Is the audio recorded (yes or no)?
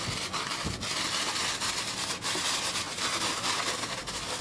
yes